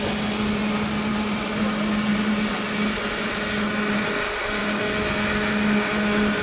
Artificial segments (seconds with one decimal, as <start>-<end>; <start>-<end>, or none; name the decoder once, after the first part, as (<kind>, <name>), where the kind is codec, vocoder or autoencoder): none